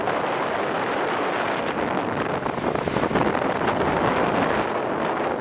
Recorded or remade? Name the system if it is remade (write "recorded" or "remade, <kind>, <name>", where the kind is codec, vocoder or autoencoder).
recorded